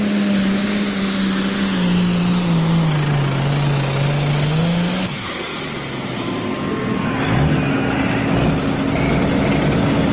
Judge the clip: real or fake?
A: real